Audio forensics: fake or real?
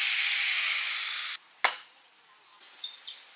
real